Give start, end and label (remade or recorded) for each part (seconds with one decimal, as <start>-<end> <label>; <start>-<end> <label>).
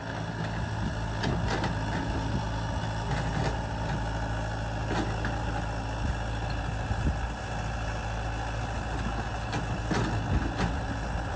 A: 0.0-11.4 recorded